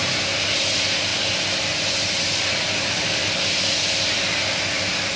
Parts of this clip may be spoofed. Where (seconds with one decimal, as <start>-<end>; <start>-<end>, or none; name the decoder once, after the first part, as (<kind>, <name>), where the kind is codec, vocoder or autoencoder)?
none